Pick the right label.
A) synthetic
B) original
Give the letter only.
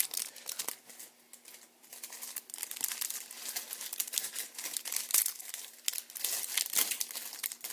B